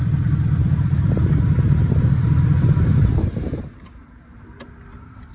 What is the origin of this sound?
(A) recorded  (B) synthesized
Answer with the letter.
B